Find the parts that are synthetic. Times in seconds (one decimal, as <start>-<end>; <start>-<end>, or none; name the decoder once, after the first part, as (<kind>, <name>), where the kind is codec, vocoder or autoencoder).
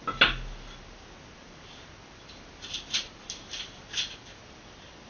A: none